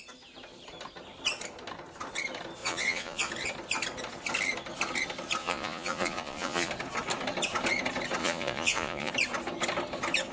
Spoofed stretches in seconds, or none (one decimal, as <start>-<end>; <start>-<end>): 2.6-3.3; 5.4-6.7; 8.2-9.1